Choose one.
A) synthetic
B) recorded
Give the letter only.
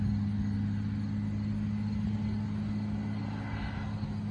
B